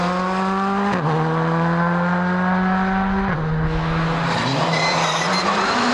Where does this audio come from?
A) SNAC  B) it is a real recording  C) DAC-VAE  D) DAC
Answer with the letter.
B